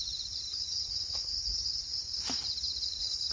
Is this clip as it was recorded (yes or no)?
no